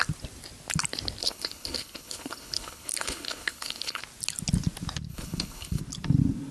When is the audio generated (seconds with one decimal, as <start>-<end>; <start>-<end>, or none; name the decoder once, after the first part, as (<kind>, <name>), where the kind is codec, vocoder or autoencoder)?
1.2-4.0 (codec, HILCodec); 5.1-5.8